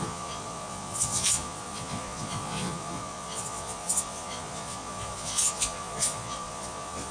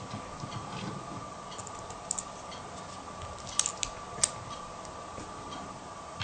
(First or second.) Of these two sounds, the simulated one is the first